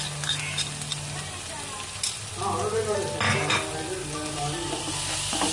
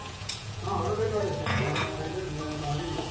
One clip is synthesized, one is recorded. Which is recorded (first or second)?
first